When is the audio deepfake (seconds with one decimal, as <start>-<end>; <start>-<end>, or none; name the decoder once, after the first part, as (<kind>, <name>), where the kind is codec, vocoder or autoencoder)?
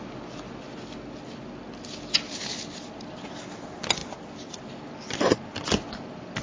none